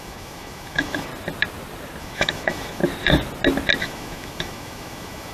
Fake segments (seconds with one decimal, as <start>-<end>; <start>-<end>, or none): 0.0-1.1; 2.0-2.8; 3.8-5.3